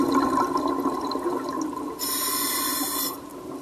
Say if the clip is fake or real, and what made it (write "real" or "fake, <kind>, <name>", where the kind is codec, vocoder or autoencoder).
real